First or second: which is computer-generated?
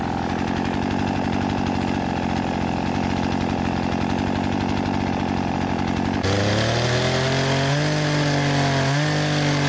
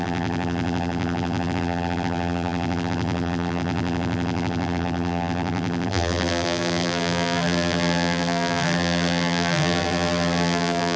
second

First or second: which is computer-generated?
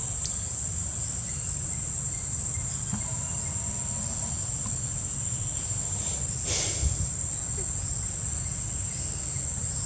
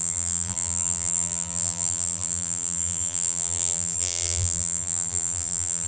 second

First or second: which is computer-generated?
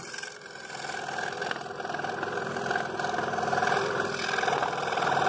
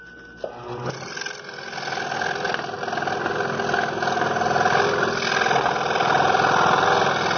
first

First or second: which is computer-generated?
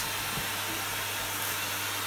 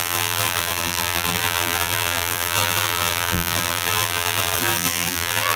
second